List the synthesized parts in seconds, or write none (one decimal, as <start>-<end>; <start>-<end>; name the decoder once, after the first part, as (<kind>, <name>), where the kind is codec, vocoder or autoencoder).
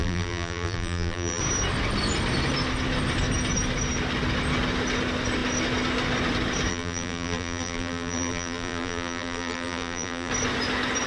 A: 0.0-1.4 (vocoder, BigVGAN v2); 6.7-10.3